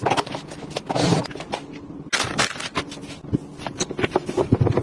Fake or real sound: real